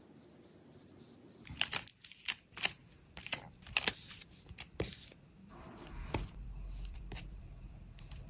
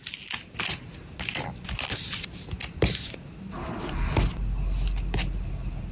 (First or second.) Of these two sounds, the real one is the second